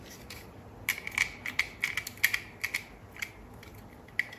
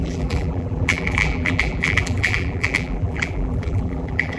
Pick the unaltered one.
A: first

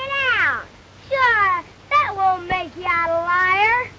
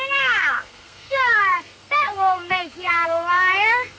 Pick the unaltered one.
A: first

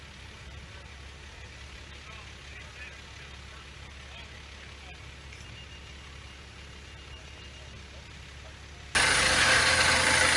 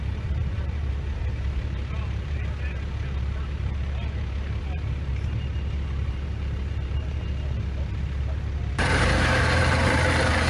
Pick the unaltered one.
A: first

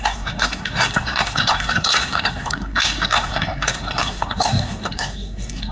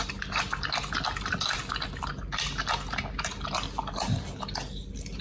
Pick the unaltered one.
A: second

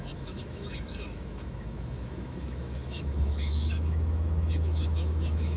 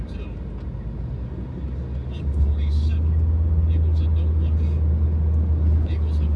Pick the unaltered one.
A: second